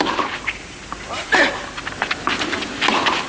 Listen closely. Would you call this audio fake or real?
real